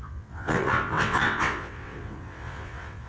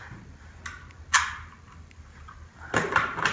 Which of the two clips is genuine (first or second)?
second